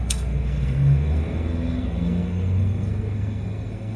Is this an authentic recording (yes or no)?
no